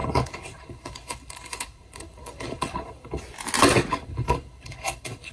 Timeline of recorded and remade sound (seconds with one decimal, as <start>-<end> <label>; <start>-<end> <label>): 0.0-3.2 remade; 3.2-3.9 recorded; 3.9-5.3 remade